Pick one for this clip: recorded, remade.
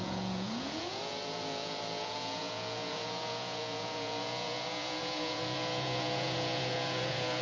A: remade